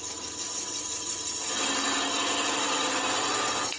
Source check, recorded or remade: recorded